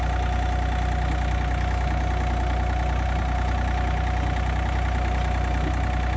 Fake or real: real